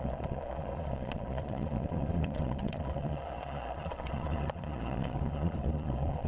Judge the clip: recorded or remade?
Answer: remade